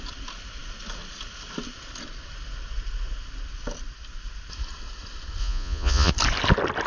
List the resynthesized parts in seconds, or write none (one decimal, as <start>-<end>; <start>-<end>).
5.4-6.1